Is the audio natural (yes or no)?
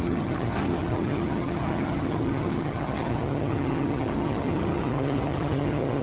no